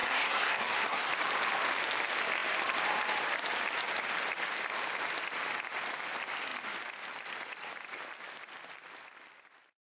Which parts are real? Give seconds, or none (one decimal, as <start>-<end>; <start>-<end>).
1.1-9.8